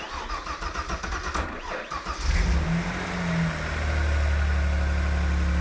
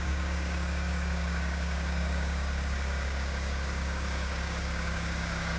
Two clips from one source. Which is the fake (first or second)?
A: second